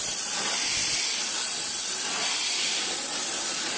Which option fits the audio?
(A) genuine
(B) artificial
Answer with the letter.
A